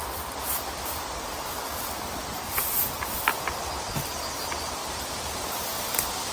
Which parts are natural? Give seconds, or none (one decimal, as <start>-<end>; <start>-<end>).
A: 0.0-4.8